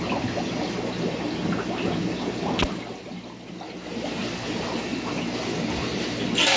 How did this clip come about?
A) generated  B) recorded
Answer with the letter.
B